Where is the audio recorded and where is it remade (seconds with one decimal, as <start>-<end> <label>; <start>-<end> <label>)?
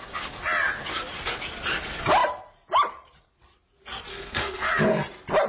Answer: 0.0-4.1 recorded; 4.1-4.7 remade; 4.7-5.5 recorded